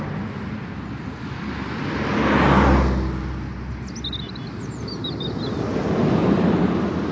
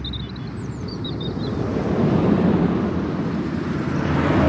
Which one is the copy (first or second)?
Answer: second